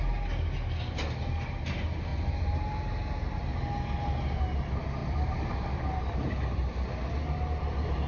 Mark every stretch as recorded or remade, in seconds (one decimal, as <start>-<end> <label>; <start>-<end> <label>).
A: 0.0-2.1 recorded; 2.1-3.5 remade; 3.5-5.0 recorded; 5.0-6.4 remade; 6.4-8.1 recorded